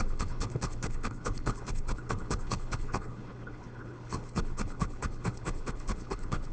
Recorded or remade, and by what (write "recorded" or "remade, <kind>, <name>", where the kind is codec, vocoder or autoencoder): remade, codec, HILCodec